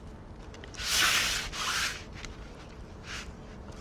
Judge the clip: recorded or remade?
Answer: recorded